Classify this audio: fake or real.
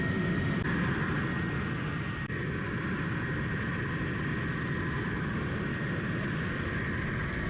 real